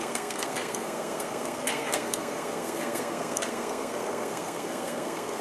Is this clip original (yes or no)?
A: no